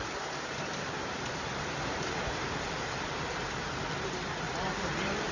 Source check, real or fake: fake